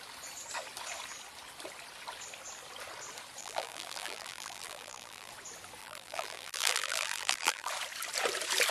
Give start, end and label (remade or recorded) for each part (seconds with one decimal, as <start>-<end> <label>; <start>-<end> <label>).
0.0-3.4 recorded; 3.4-5.3 remade; 5.3-5.8 recorded; 5.8-7.7 remade; 7.7-8.7 recorded